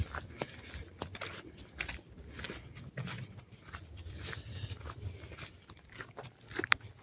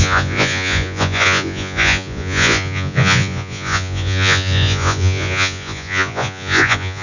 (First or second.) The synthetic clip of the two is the second